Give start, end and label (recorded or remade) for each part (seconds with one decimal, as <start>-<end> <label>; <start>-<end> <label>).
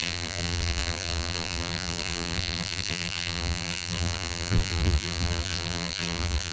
0.0-6.5 remade